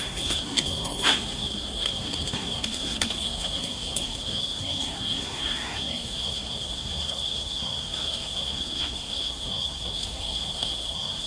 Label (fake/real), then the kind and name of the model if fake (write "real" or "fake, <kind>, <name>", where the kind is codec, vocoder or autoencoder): fake, codec, SNAC